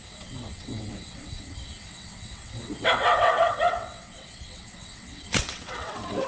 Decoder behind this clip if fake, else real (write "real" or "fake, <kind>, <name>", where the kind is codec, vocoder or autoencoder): fake, vocoder, WaveNeXt